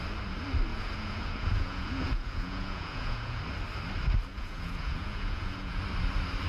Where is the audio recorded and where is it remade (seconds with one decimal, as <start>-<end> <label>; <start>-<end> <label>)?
0.0-0.7 recorded; 0.7-3.4 remade; 3.4-4.3 recorded; 4.3-5.8 remade; 5.8-6.5 recorded